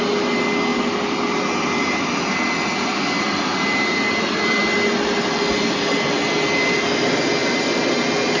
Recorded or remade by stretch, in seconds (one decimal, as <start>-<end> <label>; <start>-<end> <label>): 0.0-8.4 recorded